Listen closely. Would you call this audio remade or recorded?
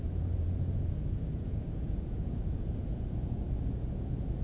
remade